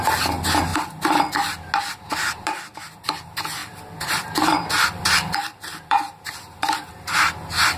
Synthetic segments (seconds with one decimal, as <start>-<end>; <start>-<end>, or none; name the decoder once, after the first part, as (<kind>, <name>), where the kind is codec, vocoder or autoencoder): 3.6-6.9 (vocoder, BigVGAN v2)